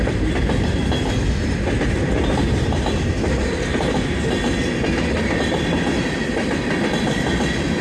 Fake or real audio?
real